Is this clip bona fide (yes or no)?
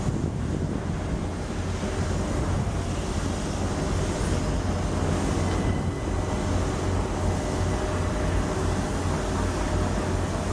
yes